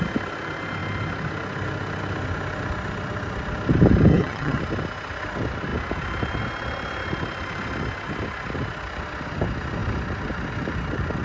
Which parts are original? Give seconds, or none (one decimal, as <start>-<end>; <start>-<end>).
0.0-4.1; 4.6-11.2